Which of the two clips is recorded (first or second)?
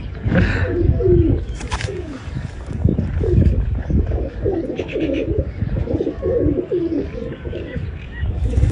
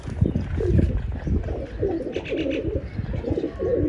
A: second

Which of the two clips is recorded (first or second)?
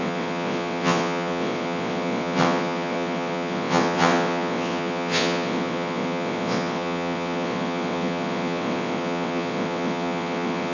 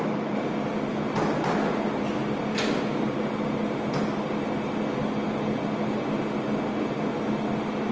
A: second